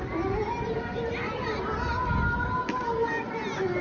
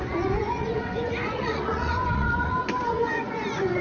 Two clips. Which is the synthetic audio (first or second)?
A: second